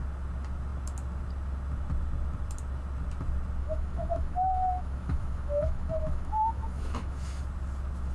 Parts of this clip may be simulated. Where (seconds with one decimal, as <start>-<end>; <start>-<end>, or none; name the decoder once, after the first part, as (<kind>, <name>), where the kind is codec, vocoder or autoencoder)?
3.6-7.4 (autoencoder, DAC-VAE)